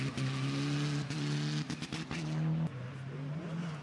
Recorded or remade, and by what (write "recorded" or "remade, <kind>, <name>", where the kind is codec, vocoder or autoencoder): recorded